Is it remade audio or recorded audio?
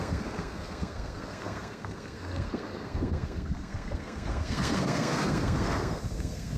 remade